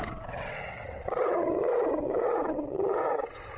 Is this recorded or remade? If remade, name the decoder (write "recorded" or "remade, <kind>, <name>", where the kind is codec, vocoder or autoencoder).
remade, vocoder, WaveNeXt